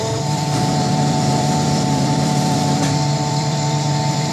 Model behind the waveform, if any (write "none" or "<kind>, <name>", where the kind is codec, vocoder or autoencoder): vocoder, BigVGAN v2